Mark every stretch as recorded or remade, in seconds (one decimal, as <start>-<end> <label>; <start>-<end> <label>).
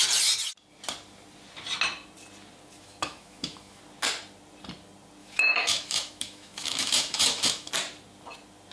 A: 0.0-2.7 recorded; 2.7-3.8 remade; 3.8-5.2 recorded; 5.2-7.7 remade; 7.7-8.7 recorded